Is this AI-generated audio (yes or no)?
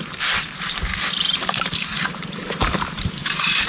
yes